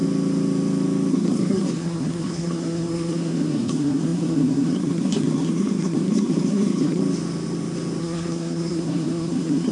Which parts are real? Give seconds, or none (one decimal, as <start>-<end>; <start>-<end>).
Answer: 0.0-1.1; 7.0-8.0